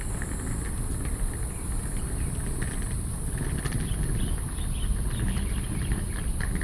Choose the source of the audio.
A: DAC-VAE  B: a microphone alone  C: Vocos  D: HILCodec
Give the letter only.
B